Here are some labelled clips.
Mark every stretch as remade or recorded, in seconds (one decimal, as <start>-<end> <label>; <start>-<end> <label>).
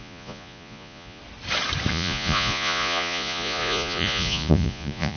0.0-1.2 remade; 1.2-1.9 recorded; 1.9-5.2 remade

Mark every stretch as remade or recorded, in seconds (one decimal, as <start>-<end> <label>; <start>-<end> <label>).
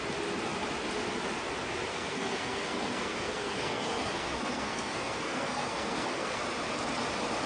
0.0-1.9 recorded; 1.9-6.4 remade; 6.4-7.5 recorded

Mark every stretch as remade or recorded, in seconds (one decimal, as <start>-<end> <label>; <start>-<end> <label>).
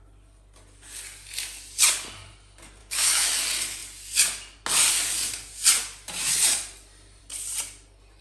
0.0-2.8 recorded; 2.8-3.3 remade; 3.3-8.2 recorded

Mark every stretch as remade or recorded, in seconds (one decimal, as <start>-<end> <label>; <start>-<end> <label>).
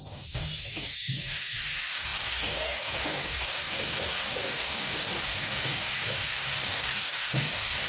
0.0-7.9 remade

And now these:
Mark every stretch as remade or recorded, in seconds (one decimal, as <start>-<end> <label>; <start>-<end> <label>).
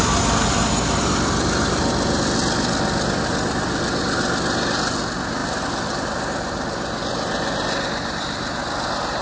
0.0-9.2 recorded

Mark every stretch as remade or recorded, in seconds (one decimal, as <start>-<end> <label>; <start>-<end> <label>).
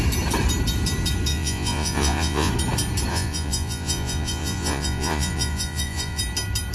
0.0-1.3 recorded; 1.3-2.5 remade; 2.5-3.1 recorded; 3.1-6.2 remade; 6.2-6.7 recorded